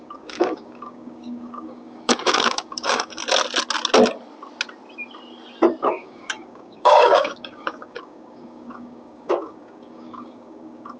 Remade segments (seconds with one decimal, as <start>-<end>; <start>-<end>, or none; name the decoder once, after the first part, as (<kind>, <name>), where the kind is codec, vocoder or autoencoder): 0.0-3.2 (codec, DAC); 5.8-11.0